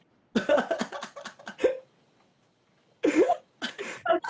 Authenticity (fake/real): real